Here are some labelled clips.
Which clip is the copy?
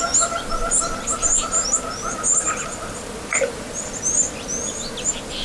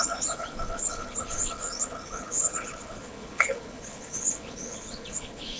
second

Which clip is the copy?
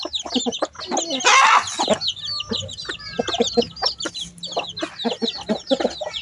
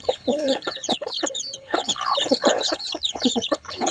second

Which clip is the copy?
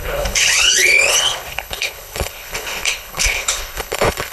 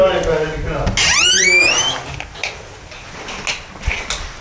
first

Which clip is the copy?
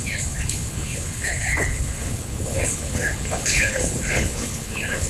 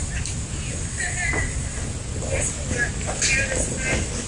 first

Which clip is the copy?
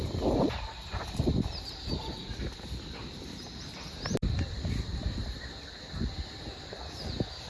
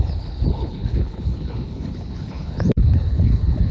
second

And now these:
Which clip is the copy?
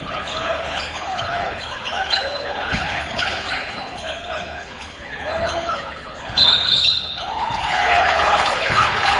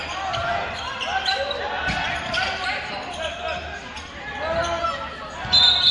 first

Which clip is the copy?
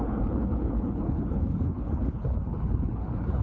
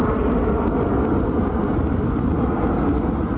first